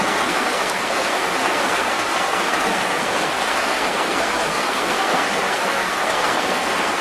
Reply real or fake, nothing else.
fake